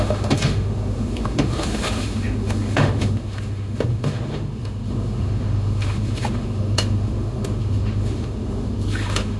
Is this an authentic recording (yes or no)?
no